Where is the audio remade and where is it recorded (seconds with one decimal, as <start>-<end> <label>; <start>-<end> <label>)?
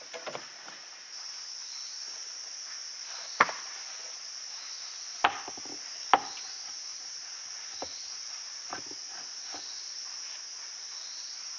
0.0-6.9 recorded; 6.9-9.0 remade; 9.0-11.6 recorded